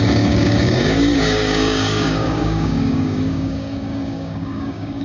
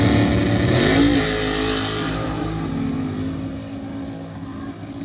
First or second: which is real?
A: second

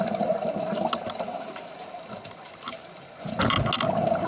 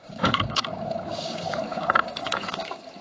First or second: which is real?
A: first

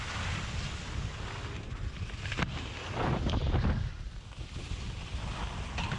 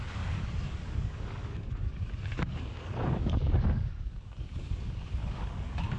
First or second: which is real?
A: first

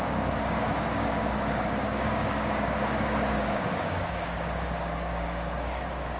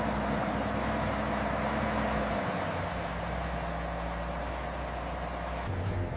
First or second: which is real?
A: second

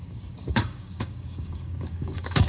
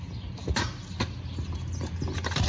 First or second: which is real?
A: second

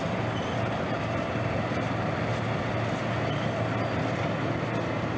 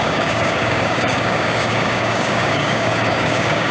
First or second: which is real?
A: first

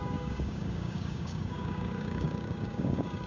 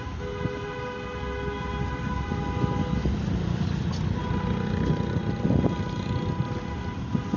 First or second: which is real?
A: second